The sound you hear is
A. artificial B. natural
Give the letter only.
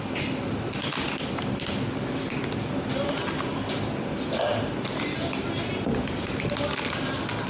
B